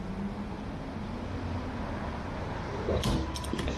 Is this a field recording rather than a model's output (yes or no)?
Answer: yes